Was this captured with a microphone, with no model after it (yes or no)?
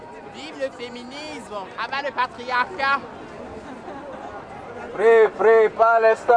yes